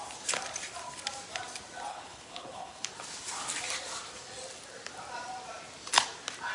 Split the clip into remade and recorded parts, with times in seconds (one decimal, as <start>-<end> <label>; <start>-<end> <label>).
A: 0.0-1.9 recorded; 1.9-2.9 remade; 2.9-6.5 recorded